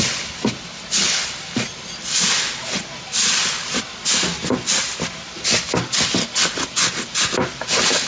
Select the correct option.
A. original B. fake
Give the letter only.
A